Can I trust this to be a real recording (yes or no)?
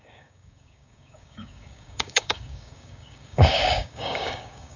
no